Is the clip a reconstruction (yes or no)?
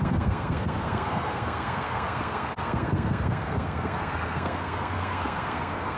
yes